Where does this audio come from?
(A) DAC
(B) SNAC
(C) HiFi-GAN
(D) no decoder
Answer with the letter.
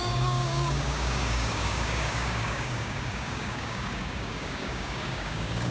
A